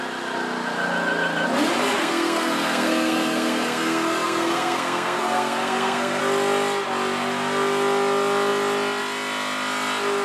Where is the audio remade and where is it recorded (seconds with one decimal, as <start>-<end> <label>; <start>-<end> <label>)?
0.0-2.0 recorded; 2.0-6.2 remade; 6.2-10.2 recorded